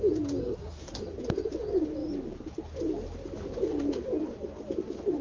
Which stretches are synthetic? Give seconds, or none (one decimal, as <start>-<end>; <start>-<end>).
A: 0.4-1.0